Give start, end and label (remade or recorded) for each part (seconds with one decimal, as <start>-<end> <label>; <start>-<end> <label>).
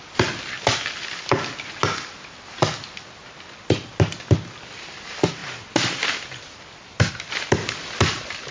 0.0-8.5 recorded